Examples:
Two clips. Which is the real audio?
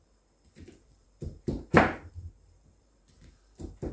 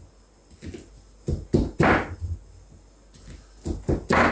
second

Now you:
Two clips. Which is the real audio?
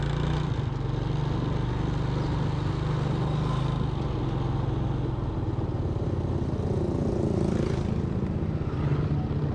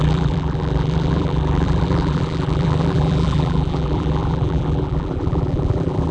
first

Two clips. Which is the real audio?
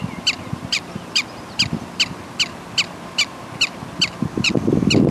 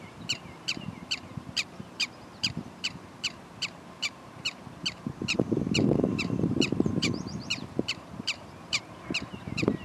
first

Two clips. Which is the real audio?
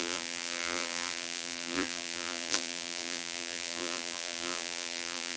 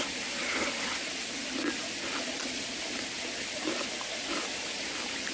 second